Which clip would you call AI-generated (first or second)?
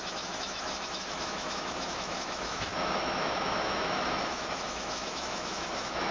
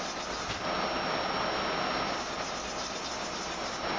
first